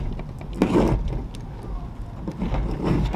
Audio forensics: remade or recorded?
recorded